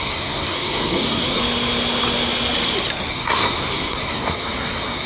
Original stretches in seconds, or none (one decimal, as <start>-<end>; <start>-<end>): 1.4-3.1